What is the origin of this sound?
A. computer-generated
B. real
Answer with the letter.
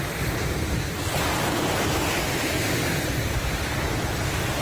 B